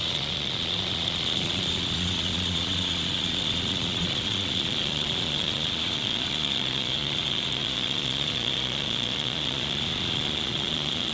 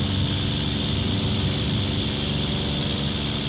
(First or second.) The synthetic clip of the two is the first